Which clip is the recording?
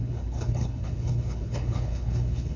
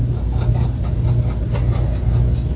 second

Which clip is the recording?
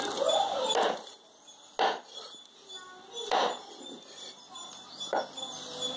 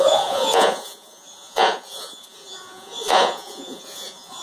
first